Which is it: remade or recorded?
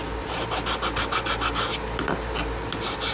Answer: recorded